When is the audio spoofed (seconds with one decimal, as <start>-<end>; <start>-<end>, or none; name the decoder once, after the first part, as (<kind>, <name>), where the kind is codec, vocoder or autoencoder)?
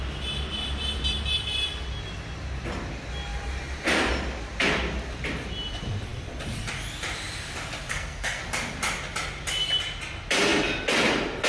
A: 7.9-8.4 (codec, SNAC)